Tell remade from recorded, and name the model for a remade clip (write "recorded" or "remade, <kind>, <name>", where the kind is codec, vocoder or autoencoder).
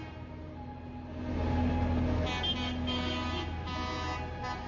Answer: recorded